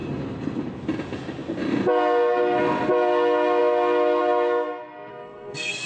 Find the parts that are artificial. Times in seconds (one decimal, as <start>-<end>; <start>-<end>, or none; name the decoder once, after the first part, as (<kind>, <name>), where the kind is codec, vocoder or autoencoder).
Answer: 5.1-5.9 (codec, SNAC)

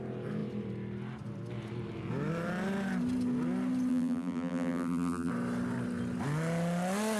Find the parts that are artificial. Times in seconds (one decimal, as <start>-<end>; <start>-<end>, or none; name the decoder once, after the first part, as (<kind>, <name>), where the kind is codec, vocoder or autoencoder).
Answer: 3.9-5.3 (vocoder, BigVGAN v2)

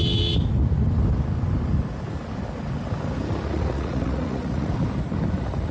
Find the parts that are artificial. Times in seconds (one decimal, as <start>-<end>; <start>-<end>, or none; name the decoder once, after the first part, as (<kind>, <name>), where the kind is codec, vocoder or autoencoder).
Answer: 3.5-4.7 (vocoder, Vocos)